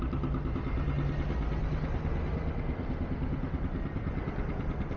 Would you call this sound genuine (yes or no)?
yes